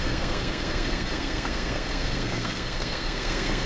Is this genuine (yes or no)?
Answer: no